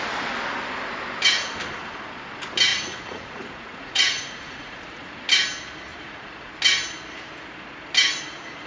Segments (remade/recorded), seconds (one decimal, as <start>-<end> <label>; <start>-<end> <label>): 0.0-2.7 recorded; 2.7-5.2 remade; 5.2-5.9 recorded; 5.9-6.5 remade; 6.5-8.7 recorded